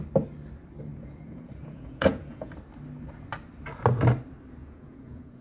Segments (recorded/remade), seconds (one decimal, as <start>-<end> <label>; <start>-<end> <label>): 0.0-0.9 recorded; 0.9-2.5 remade; 2.5-4.6 recorded; 4.6-5.4 remade